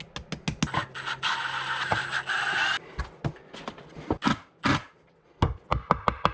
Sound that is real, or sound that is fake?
real